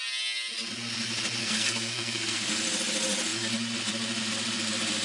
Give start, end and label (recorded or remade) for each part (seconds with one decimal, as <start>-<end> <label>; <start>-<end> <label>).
0.0-1.4 recorded; 1.4-2.5 remade; 2.5-5.0 recorded